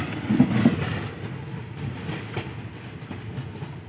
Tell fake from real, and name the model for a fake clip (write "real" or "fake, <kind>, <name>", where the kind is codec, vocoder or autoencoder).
real